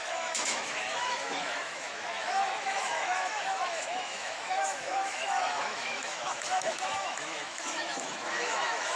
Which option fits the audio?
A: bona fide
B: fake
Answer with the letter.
B